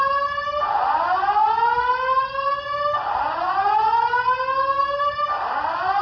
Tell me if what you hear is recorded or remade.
recorded